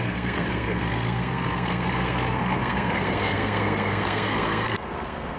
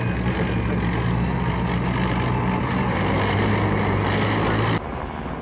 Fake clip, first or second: first